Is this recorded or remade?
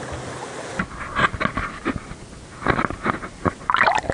recorded